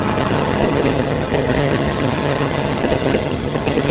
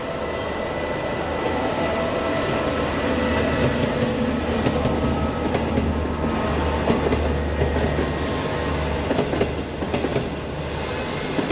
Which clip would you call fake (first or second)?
first